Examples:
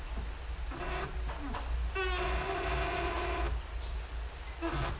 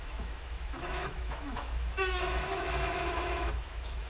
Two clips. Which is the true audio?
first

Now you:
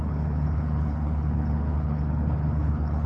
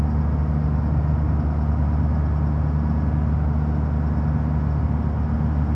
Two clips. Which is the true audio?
second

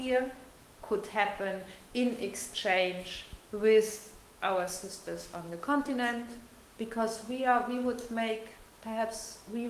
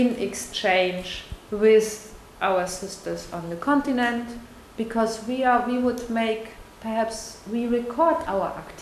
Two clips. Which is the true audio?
second